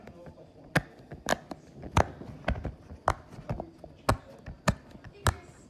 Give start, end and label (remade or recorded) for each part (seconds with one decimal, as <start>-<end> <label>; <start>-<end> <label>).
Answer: 0.0-5.7 recorded